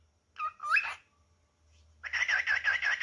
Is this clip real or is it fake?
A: real